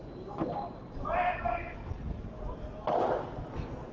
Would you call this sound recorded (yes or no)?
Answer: yes